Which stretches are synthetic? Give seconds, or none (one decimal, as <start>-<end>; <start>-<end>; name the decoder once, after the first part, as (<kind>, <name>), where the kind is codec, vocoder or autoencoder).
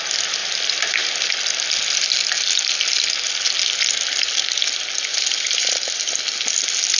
0.4-1.3 (vocoder, BigVGAN v2); 5.1-6.0